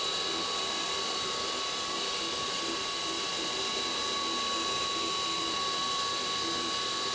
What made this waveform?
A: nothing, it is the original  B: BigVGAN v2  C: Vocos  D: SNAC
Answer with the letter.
B